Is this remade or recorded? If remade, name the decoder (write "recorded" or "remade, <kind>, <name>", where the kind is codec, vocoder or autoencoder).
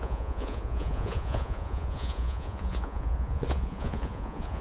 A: remade, vocoder, Vocos